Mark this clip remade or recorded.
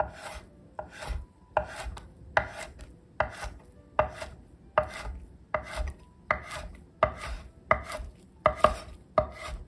recorded